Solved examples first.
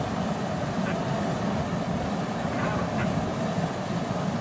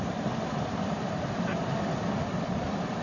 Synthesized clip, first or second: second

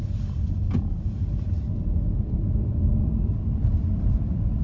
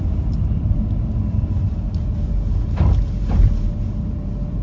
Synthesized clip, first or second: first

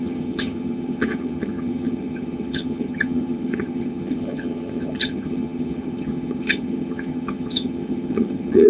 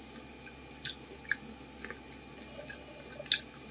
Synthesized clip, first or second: first